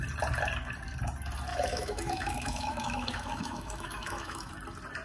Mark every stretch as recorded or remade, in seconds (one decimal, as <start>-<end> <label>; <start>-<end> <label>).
0.0-1.5 recorded; 1.5-4.5 remade; 4.5-5.0 recorded